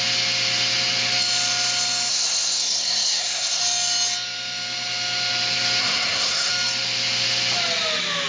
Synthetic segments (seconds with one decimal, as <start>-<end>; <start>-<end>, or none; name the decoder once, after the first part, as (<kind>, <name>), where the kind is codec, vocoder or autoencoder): 2.1-3.6 (codec, SNAC); 5.8-6.5